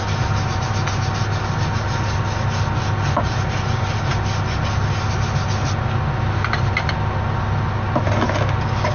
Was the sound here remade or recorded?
recorded